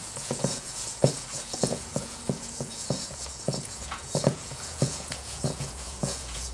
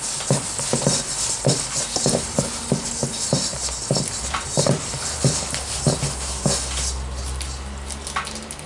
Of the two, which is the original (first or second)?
second